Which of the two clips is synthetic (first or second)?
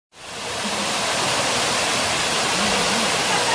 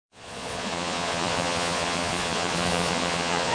second